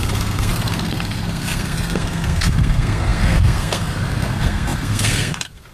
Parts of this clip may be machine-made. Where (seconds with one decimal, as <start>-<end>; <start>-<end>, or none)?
0.0-5.7